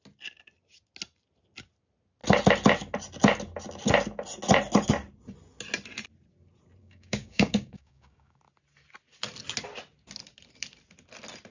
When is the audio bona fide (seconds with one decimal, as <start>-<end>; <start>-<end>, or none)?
0.0-6.8; 8.4-11.5